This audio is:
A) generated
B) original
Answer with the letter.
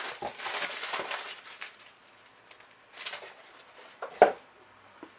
B